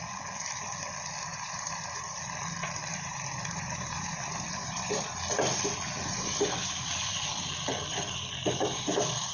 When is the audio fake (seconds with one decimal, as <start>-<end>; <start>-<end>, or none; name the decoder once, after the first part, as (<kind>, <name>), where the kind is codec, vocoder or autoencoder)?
1.3-2.2 (vocoder, BigVGAN v2); 2.9-5.1